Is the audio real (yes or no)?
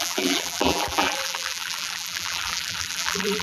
no